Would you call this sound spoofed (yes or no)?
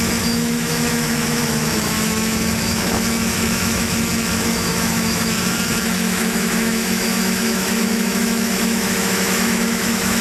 yes